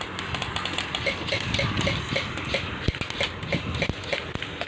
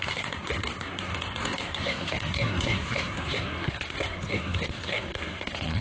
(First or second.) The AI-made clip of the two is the second